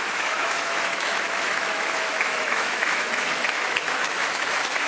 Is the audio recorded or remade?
remade